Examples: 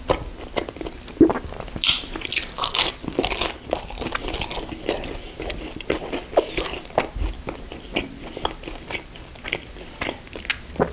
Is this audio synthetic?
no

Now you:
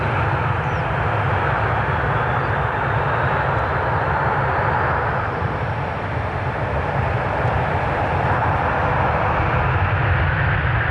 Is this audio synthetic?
no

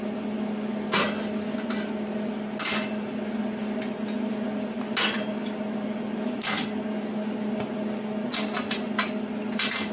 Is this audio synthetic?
no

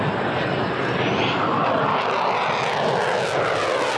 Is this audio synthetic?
no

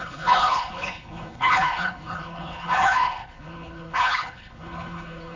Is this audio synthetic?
yes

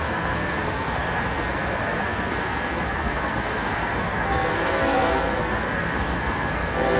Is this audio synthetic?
yes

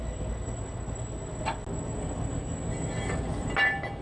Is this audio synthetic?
no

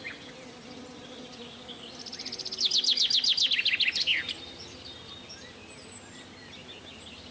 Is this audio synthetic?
no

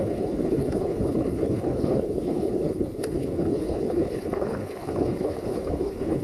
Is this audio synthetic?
yes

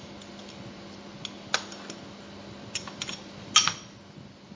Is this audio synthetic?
no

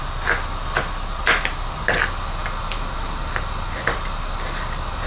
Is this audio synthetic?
no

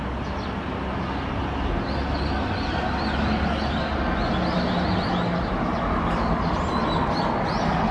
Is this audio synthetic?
no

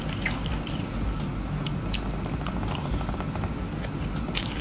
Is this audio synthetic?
no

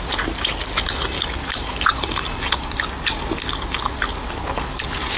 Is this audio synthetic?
no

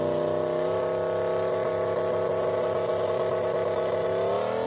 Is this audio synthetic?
no